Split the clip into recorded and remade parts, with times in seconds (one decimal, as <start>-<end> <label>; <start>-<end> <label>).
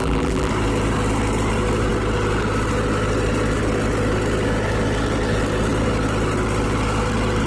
0.0-0.5 remade; 0.5-7.5 recorded